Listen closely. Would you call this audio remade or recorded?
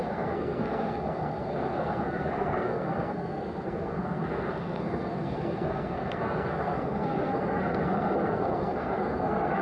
remade